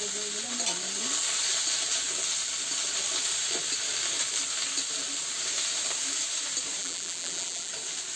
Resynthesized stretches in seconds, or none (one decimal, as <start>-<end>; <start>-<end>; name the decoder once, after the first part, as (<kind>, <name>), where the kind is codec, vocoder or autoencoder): 6.8-7.7 (vocoder, BigVGAN v2)

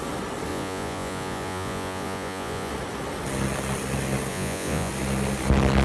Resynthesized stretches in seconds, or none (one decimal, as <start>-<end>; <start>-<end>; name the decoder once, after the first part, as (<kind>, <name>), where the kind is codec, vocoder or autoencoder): 0.5-2.7 (vocoder, Vocos); 4.3-4.9

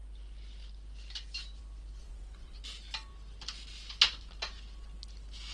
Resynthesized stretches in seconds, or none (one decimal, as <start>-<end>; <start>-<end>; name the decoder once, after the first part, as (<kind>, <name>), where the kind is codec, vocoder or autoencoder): 2.0-2.6 (vocoder, Vocos)

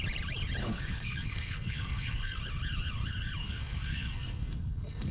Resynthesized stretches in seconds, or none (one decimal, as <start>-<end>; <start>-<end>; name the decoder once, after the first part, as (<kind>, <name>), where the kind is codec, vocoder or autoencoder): 0.6-2.4 (codec, SNAC); 3.4-5.1

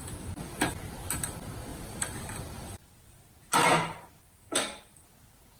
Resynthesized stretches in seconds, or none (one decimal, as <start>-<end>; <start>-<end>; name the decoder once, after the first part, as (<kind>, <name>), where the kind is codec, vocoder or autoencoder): 1.7-2.2 (vocoder, BigVGAN v2); 3.6-4.4

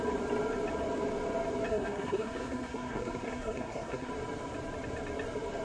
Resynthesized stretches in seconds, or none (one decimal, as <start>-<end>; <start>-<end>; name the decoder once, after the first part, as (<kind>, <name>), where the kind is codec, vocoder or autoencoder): 1.7-4.1 (codec, SNAC)

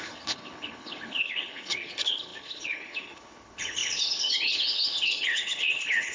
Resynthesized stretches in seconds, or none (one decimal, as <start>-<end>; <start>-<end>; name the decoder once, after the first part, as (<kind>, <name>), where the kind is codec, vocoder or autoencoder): 0.0-6.1 (codec, HILCodec)

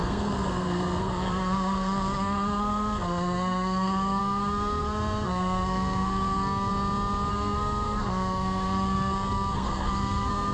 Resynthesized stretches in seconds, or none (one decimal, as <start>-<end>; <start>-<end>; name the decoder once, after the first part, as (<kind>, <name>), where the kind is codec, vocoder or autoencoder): 0.0-6.7 (codec, SNAC); 7.3-10.5